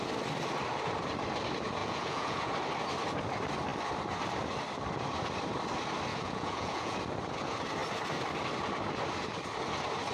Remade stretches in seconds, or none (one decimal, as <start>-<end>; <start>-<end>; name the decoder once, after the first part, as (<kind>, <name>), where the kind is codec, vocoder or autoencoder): 1.8-2.5 (vocoder, Vocos); 6.1-7.0